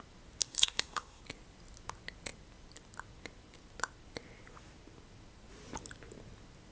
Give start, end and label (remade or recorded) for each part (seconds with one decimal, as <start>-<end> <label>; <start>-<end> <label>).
0.0-0.4 recorded; 0.4-1.2 remade; 1.2-6.7 recorded